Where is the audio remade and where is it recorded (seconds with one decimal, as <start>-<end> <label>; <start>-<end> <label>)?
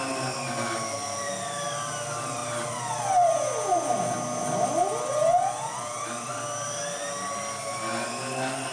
0.0-8.7 recorded